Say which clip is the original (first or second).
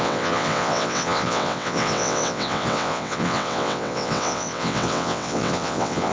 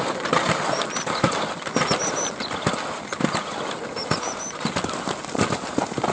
second